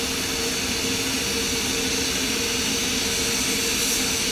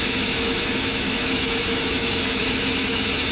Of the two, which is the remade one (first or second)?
second